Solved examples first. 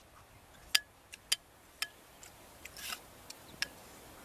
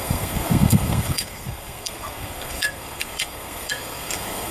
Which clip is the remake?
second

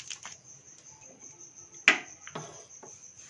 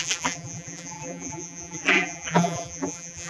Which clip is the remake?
second